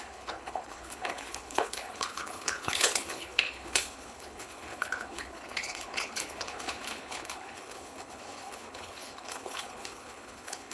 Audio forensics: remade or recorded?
remade